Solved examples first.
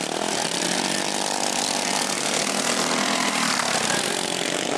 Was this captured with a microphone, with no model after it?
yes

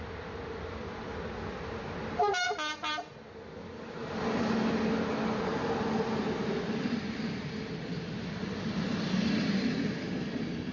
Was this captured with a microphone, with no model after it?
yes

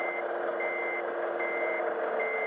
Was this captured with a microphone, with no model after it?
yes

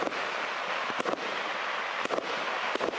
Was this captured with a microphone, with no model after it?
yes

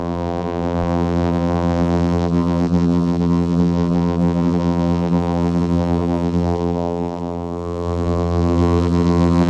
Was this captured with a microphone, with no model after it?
no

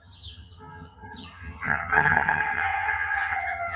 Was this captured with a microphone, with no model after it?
no